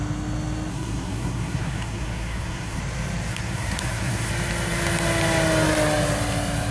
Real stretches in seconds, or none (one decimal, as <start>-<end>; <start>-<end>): 0.0-0.7; 2.8-3.3; 4.3-6.7